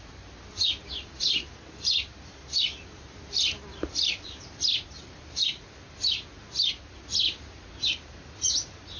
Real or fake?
real